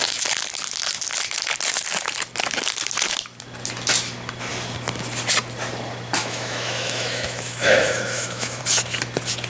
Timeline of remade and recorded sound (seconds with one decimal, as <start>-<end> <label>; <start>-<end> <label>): 0.0-6.2 recorded; 6.2-8.6 remade; 8.6-9.5 recorded